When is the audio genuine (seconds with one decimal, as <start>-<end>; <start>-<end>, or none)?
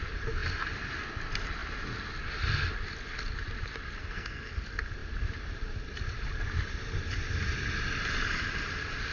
0.0-4.0; 4.5-9.1